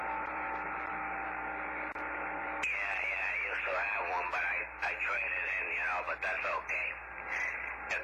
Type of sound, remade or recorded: remade